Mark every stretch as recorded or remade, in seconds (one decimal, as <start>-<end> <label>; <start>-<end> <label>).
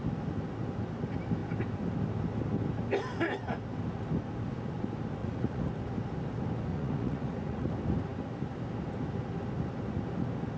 0.0-5.2 recorded; 5.2-5.7 remade; 5.7-6.7 recorded; 6.7-7.7 remade; 7.7-10.6 recorded